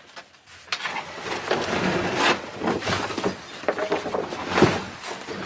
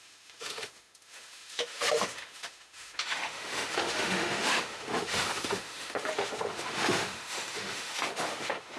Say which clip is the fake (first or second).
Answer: second